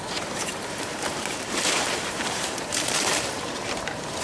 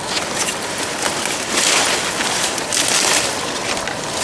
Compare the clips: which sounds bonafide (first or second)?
second